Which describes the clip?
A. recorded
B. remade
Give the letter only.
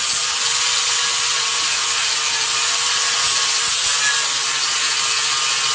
A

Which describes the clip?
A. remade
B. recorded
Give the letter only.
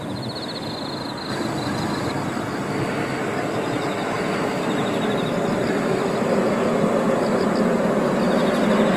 B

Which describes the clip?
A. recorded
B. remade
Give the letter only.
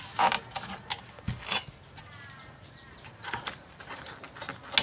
A